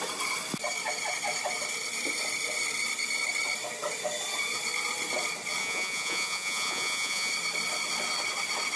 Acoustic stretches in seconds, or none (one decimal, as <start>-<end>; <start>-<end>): 0.0-5.6; 7.3-8.8

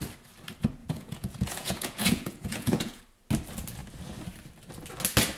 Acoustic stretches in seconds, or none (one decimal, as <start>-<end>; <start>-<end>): 0.0-0.8; 3.0-5.4